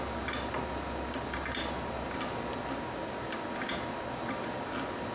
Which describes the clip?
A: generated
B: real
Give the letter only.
B